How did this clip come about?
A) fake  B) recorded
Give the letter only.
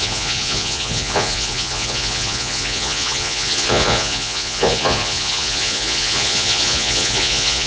A